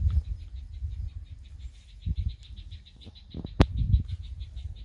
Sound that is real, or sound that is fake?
real